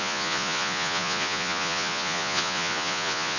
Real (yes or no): no